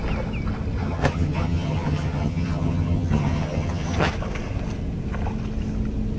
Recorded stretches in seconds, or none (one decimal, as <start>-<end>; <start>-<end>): 0.0-0.8; 4.1-6.2